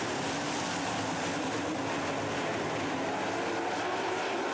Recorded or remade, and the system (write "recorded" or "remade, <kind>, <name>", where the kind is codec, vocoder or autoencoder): recorded